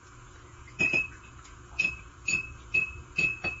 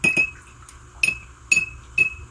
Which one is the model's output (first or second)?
first